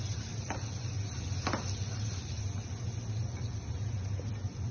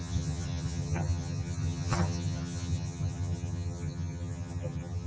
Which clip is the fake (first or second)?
second